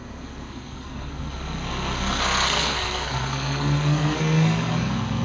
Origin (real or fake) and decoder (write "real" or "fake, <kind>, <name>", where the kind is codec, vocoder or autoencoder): fake, codec, SNAC